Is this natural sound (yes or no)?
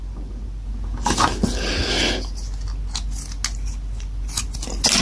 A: yes